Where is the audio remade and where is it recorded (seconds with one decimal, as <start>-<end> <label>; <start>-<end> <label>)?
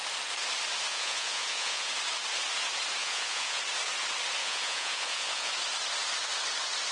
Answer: 0.0-0.9 recorded; 0.9-1.9 remade; 1.9-3.0 recorded; 3.0-3.6 remade; 3.6-4.4 recorded; 4.4-5.5 remade; 5.5-6.9 recorded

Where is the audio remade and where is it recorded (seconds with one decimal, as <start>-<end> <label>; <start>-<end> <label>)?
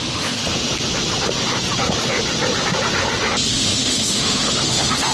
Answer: 0.0-0.4 remade; 0.4-3.5 recorded; 3.5-5.1 remade